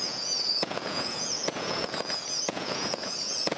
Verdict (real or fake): fake